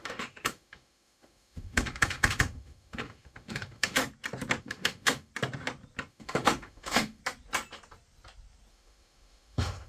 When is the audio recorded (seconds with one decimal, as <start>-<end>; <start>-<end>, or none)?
4.0-4.6; 5.3-6.1; 7.2-8.7